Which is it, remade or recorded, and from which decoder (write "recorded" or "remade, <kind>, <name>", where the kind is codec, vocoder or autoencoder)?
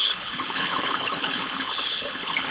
remade, codec, HILCodec